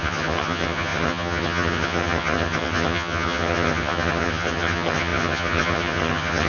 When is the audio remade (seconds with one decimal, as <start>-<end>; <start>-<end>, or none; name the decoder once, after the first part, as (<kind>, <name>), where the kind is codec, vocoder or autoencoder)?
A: 0.0-6.5 (vocoder, HiFi-GAN)